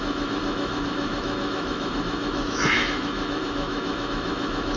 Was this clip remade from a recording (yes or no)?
yes